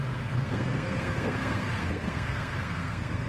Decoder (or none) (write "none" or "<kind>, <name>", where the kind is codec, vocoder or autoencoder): codec, SNAC